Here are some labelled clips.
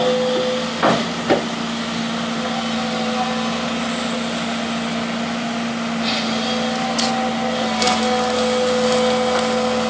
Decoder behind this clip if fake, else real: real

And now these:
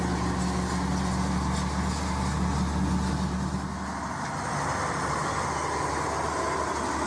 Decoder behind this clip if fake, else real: real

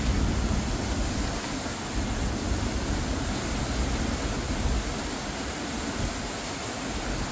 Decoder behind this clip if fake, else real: real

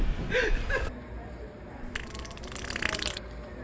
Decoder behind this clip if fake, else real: real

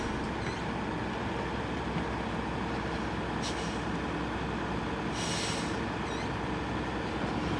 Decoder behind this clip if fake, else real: real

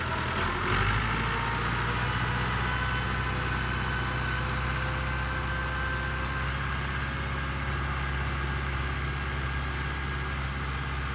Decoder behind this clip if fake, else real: real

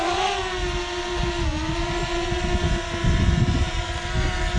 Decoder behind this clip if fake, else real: real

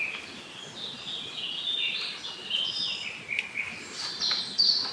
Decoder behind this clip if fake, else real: real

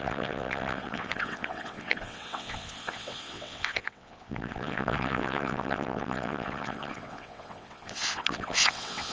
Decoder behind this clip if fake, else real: fake, vocoder, WaveNeXt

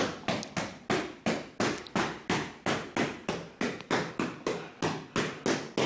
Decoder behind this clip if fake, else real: real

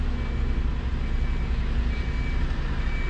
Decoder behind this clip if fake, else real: real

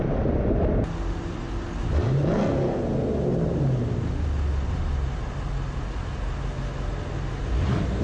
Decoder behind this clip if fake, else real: real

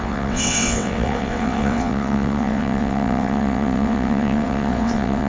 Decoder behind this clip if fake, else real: fake, vocoder, WaveNeXt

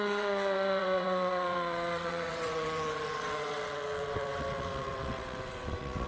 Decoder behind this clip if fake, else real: fake, vocoder, WaveNeXt